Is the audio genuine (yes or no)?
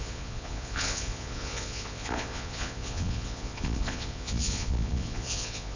no